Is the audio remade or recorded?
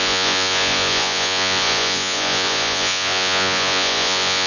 remade